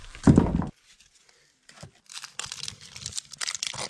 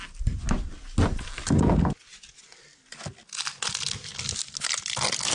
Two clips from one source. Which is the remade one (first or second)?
first